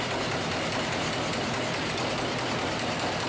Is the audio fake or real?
real